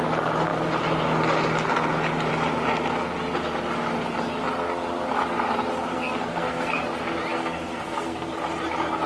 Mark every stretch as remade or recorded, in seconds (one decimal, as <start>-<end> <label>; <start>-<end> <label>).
0.0-5.9 recorded; 5.9-6.8 remade; 6.8-7.3 recorded; 7.3-8.3 remade; 8.3-9.1 recorded